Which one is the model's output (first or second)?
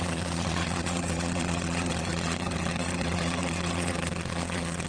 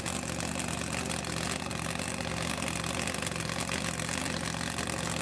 first